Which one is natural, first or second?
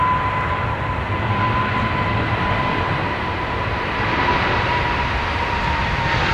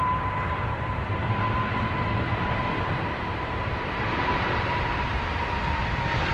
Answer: first